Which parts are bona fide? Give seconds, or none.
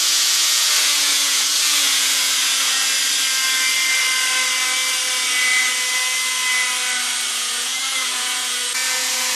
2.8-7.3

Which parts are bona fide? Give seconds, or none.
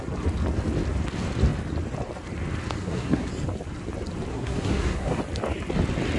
0.0-2.8; 3.3-4.3; 5.2-6.2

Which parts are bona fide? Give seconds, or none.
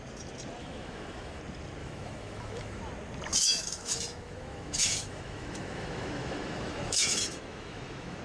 0.0-0.6; 1.4-1.8; 2.8-3.4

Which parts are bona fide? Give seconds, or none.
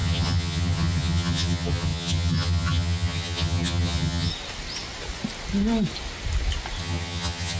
4.3-6.8